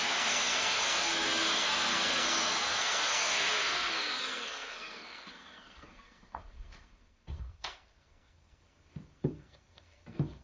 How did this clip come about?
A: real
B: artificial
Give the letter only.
B